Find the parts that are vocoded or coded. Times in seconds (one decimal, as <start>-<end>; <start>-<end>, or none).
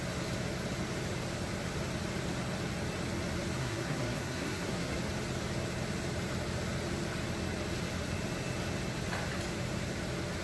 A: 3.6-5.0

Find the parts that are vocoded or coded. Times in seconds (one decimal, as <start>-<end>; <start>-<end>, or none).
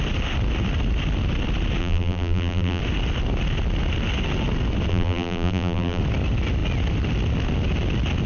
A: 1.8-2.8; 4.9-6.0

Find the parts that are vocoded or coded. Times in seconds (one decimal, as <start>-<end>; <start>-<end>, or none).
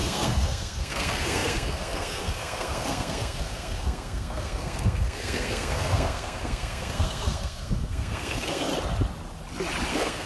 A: 0.0-8.7; 9.9-10.3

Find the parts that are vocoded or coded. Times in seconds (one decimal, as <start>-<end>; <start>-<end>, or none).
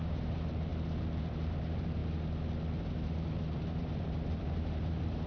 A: 0.0-0.7; 1.2-2.0; 2.8-5.3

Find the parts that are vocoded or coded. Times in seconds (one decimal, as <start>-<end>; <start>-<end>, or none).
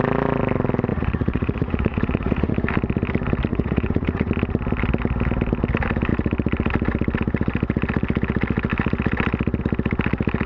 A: 0.9-2.5; 3.5-4.3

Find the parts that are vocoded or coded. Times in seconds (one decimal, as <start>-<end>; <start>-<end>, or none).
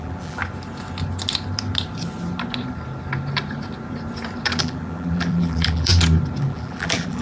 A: 0.0-0.4; 4.6-5.9; 6.4-7.2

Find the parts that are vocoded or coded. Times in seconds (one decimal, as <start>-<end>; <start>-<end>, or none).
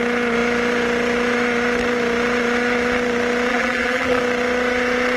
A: 3.5-4.2